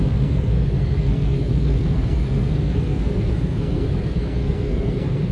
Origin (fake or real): fake